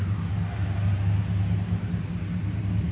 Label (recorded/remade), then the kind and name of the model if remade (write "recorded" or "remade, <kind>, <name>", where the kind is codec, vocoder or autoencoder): recorded